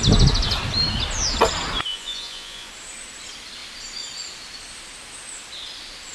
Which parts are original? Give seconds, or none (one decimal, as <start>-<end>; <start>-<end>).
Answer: 0.0-1.9; 2.7-6.1